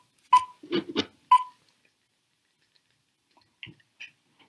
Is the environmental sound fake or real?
real